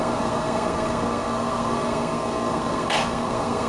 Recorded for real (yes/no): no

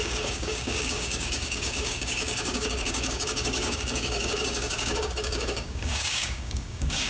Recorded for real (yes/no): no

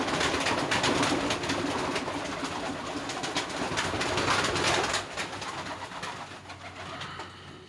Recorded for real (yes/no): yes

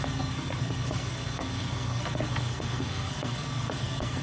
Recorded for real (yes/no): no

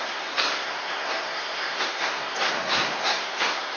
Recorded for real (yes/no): no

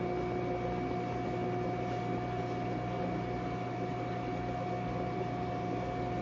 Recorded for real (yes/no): yes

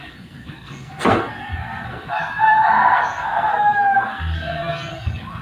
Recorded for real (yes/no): no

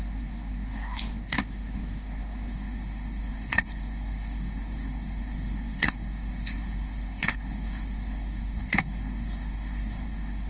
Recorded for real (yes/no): no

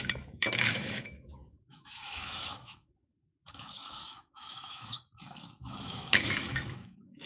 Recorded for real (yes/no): no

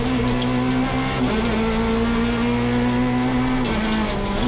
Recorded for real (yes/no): yes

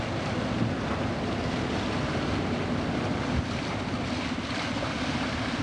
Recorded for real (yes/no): yes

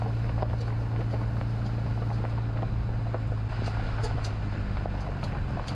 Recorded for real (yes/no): yes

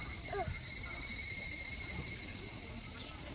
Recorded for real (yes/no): yes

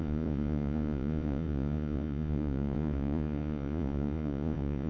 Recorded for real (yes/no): no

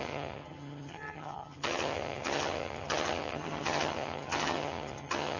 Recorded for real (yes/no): no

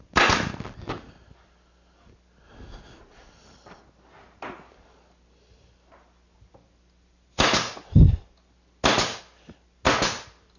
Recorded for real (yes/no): yes